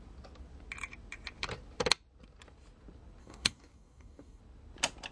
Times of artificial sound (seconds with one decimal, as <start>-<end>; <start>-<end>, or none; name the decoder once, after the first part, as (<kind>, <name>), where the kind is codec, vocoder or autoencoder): 3.2-4.4 (codec, DAC)